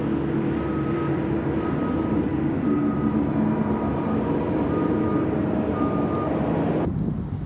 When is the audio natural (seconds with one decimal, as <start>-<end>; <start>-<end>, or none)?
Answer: 0.0-7.5